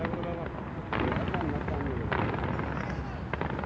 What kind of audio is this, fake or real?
real